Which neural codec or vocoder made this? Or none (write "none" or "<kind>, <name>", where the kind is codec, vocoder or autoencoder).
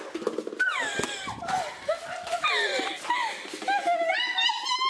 none